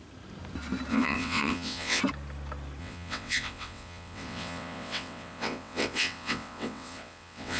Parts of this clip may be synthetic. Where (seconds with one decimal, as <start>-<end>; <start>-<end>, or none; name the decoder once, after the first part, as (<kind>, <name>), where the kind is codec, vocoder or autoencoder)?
0.9-2.0 (vocoder, WaveNeXt); 2.8-7.6

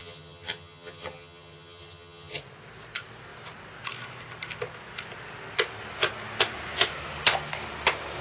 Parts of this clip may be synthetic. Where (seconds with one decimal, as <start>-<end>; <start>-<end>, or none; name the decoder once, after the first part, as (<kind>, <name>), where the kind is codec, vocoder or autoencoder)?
0.0-2.4 (vocoder, HiFi-GAN)

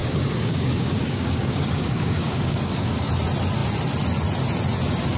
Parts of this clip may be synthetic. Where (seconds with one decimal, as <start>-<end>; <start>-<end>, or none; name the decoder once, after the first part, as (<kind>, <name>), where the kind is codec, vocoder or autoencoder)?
0.0-3.1 (codec, DAC)

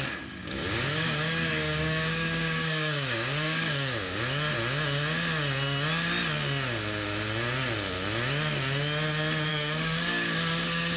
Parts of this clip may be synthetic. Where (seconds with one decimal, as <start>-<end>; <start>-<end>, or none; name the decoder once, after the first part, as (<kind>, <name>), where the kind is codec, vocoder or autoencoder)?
0.4-4.2 (codec, DAC); 9.5-11.0

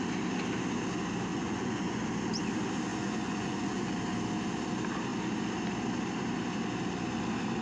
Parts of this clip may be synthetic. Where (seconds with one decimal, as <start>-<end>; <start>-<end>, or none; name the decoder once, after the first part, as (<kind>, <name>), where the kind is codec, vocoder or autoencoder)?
1.3-2.0 (vocoder, Vocos); 2.9-3.9

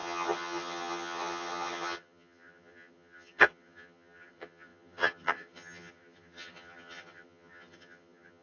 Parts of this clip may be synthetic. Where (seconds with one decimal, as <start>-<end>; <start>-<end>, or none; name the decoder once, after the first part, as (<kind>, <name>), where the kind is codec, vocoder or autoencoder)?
0.0-8.4 (vocoder, HiFi-GAN)

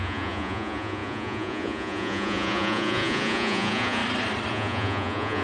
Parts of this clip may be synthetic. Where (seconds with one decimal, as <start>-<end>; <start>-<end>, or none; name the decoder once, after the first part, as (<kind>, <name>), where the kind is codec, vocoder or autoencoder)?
0.0-4.0 (vocoder, Vocos); 4.5-5.4